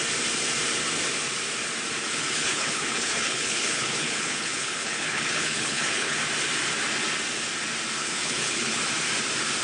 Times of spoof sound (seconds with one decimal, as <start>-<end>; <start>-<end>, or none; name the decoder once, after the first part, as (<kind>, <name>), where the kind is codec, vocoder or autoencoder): 2.1-6.2 (codec, HILCodec); 8.0-8.8